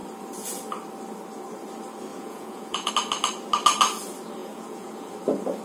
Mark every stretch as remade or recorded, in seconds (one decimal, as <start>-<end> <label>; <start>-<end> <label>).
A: 0.0-2.1 recorded; 2.1-2.9 remade; 2.9-4.4 recorded; 4.4-5.1 remade; 5.1-5.6 recorded